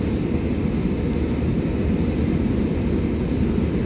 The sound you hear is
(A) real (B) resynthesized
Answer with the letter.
A